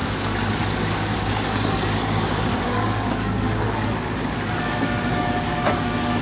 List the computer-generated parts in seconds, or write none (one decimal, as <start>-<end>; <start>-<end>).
0.0-6.2